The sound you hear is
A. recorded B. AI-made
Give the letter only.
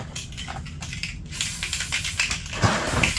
A